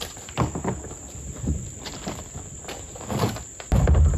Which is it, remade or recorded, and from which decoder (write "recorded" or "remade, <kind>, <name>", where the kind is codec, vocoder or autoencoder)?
recorded